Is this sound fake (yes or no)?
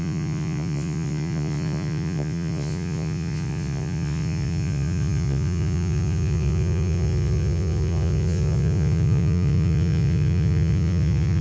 yes